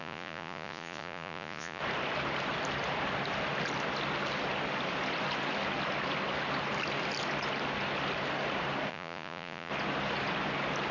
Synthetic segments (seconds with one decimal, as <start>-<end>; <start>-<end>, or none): 0.0-1.8; 8.9-9.7